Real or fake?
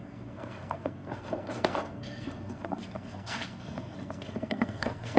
fake